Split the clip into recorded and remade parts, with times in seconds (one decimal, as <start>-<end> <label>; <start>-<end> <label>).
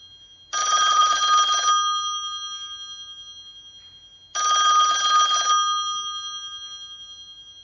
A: 0.0-0.6 recorded; 0.6-1.2 remade; 1.2-7.6 recorded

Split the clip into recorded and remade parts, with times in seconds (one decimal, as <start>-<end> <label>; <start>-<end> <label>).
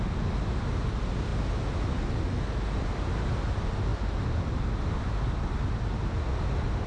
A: 0.0-6.9 recorded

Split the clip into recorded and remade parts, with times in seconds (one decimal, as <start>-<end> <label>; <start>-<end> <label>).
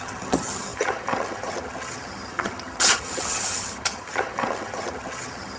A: 0.0-5.6 remade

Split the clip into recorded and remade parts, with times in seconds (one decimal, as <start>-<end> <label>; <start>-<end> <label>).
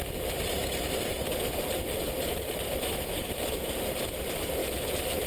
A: 0.0-2.8 recorded; 2.8-3.3 remade; 3.3-5.3 recorded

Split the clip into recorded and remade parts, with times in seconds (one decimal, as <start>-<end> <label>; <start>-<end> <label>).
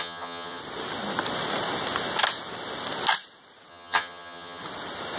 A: 0.0-0.6 remade; 0.6-3.7 recorded; 3.7-4.6 remade; 4.6-5.2 recorded